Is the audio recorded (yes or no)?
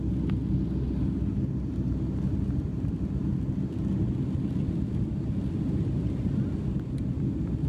yes